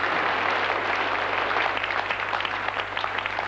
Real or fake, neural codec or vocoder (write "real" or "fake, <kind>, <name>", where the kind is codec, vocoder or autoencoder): real